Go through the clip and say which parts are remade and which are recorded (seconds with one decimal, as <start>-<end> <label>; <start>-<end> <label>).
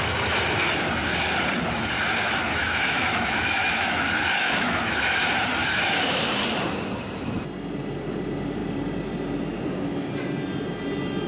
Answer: 0.0-2.6 recorded; 2.6-4.8 remade; 4.8-5.6 recorded; 5.6-6.2 remade; 6.2-11.3 recorded